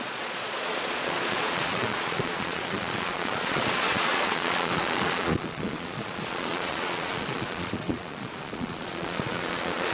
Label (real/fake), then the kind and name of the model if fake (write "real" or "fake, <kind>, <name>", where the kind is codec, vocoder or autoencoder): fake, vocoder, Vocos